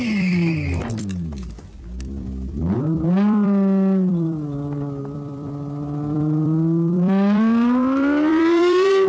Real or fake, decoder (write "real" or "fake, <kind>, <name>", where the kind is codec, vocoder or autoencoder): fake, vocoder, BigVGAN v2